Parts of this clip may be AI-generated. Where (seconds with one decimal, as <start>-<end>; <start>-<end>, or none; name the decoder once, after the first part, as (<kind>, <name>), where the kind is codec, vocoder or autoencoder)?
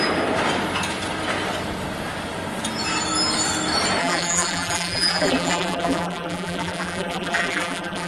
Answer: 4.0-8.1 (vocoder, BigVGAN v2)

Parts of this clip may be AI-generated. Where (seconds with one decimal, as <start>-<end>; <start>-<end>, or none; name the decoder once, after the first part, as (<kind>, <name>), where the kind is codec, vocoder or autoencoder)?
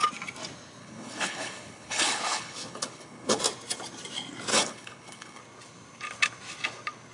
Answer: 0.8-3.4 (codec, HILCodec); 4.5-5.4